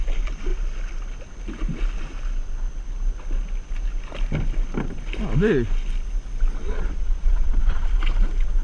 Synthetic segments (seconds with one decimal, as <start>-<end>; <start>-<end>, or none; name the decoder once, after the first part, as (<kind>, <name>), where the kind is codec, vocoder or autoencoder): 6.6-7.9 (vocoder, Vocos)